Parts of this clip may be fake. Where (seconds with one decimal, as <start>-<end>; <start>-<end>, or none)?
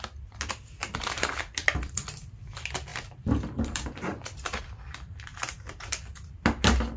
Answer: 0.8-1.3; 2.9-4.6; 5.3-5.9